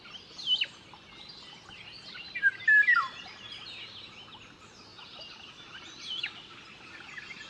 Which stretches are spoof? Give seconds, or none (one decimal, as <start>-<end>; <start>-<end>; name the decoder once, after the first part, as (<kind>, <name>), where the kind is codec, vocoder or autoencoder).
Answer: none